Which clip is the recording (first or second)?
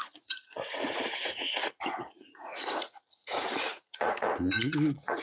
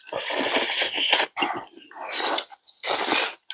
second